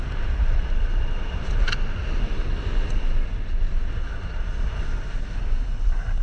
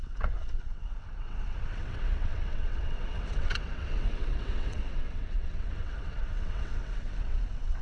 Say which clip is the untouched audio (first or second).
first